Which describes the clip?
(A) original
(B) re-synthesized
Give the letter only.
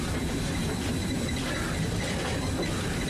A